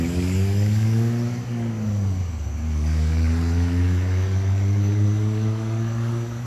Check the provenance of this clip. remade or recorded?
remade